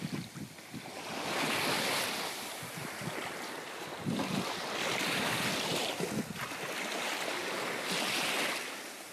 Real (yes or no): yes